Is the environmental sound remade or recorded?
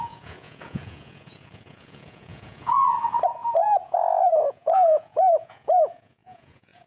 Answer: remade